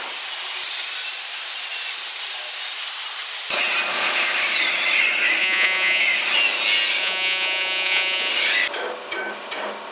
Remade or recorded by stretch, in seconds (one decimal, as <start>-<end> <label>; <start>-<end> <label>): 0.0-5.4 recorded; 5.4-6.0 remade; 6.0-7.0 recorded; 7.0-8.3 remade; 8.3-9.9 recorded